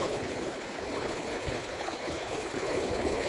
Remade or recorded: remade